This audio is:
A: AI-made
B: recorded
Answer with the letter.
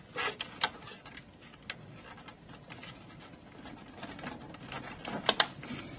B